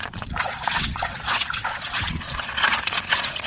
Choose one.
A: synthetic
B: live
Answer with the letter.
A